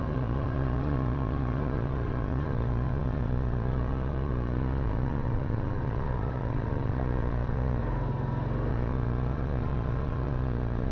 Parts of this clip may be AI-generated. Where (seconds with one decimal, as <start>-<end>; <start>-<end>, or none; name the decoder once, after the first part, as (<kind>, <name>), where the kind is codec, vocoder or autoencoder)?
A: 0.0-7.8 (vocoder, Vocos); 8.7-10.9

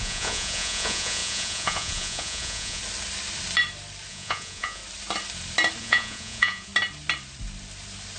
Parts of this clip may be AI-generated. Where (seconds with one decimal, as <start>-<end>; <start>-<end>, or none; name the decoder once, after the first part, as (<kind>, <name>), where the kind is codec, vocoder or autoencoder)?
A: 0.0-2.8 (vocoder, Vocos); 4.1-4.8; 5.8-6.7